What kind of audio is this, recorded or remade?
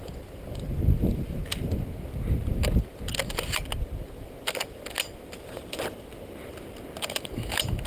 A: recorded